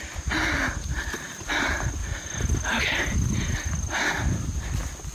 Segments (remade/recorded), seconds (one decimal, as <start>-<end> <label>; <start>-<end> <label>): 0.0-5.1 recorded

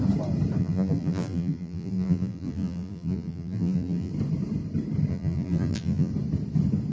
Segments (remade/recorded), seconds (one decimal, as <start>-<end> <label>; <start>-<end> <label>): 0.0-0.6 recorded; 0.6-4.1 remade; 4.1-5.1 recorded; 5.1-6.1 remade; 6.1-6.9 recorded

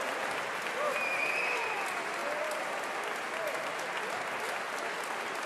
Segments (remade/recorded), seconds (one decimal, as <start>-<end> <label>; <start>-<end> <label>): 0.0-5.5 recorded

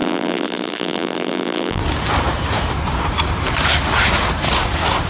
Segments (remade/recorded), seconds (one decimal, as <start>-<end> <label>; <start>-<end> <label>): 0.0-1.8 remade; 1.8-5.1 recorded

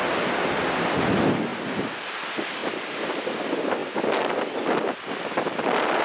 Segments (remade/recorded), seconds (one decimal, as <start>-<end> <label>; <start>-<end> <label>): 0.0-2.6 recorded; 2.6-3.2 remade; 3.2-6.0 recorded

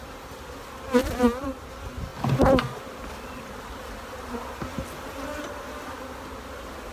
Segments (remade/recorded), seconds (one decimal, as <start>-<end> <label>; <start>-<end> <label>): 0.0-1.0 recorded; 1.0-1.7 remade; 1.7-6.9 recorded